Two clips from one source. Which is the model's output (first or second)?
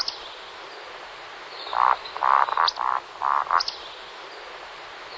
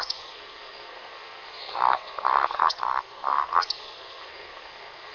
second